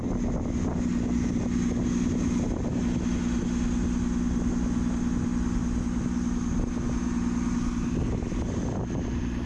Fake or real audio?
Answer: real